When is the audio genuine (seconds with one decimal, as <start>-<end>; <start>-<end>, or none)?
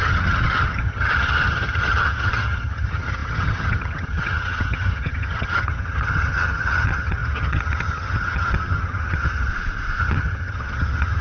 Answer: 9.5-10.0